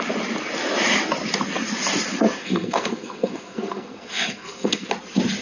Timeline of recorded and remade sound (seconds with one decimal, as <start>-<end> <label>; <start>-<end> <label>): 0.0-2.4 recorded; 2.4-4.9 remade; 4.9-5.4 recorded